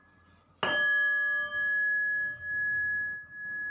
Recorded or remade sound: recorded